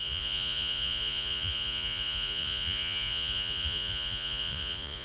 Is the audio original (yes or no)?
no